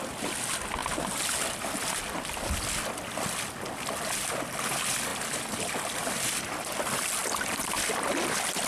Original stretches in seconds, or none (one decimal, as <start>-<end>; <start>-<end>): 0.0-5.1; 6.4-7.2; 7.9-8.7